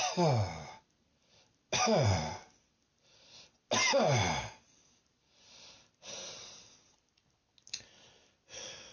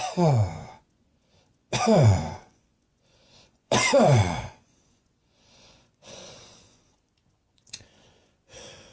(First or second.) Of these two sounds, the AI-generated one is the second